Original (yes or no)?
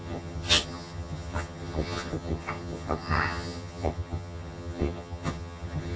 no